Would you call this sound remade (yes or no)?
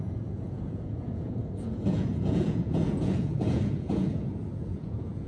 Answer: yes